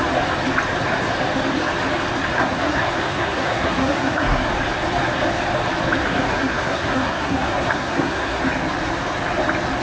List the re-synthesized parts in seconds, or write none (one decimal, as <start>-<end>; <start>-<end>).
2.3-4.5; 6.0-8.4